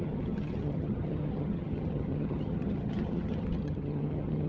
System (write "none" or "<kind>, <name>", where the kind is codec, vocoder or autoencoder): vocoder, HiFi-GAN